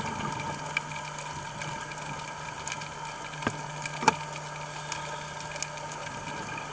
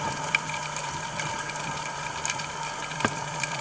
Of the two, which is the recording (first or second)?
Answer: first